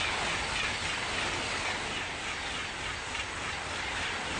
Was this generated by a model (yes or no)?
no